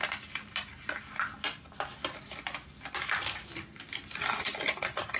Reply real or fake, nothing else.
real